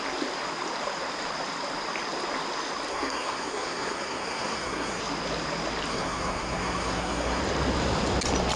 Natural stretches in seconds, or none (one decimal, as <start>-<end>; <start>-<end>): 0.0-2.9; 5.0-5.9; 7.4-8.6